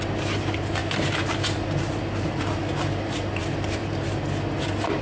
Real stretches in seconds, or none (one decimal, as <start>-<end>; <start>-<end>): 0.0-5.0